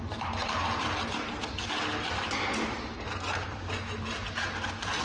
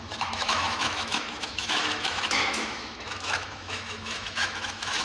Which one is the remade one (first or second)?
second